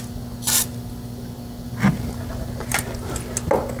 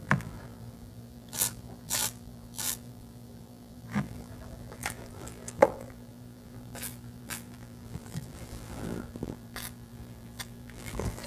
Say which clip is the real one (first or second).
first